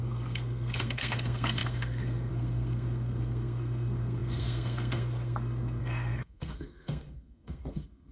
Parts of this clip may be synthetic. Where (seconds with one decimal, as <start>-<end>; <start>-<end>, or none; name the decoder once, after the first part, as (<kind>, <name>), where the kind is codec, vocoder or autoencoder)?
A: 0.0-8.1 (codec, SNAC)